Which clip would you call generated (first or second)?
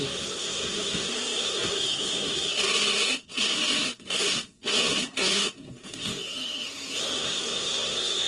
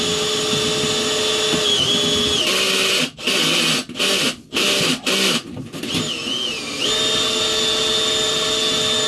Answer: first